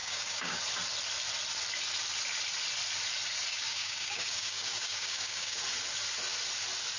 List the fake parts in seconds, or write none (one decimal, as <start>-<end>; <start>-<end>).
0.0-0.6; 3.5-5.6